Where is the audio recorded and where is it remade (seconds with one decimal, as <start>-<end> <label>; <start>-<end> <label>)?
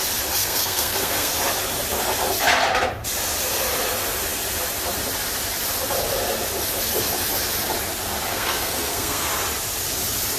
0.0-0.4 recorded; 0.4-1.3 remade; 1.3-8.3 recorded; 8.3-9.3 remade; 9.3-10.4 recorded